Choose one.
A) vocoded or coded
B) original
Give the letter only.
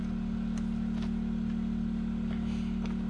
B